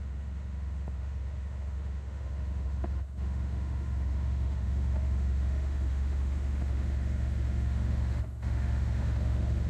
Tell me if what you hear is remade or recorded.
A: remade